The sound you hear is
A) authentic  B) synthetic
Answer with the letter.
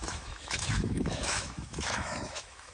B